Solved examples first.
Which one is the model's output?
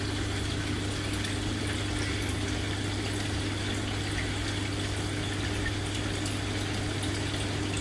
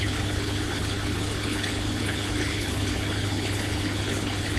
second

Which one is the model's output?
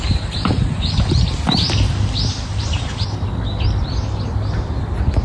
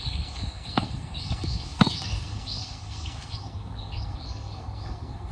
second